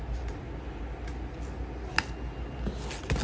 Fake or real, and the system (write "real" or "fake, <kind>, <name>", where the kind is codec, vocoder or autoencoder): real